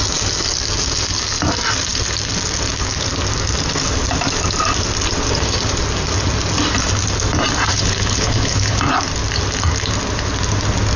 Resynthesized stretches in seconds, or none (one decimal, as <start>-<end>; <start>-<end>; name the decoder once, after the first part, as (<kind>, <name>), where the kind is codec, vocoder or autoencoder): 7.7-8.8 (codec, HILCodec)